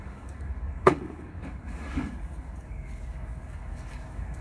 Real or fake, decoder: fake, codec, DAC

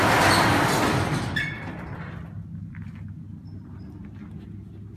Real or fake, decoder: real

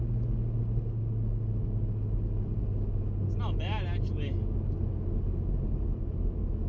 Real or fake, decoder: real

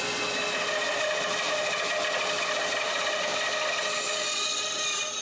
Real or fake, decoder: real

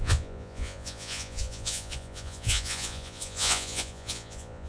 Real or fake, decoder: fake, vocoder, Vocos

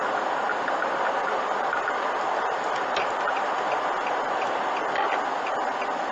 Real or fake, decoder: real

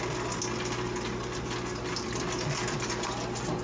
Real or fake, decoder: real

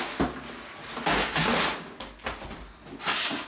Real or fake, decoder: real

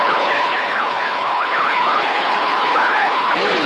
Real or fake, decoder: fake, codec, HILCodec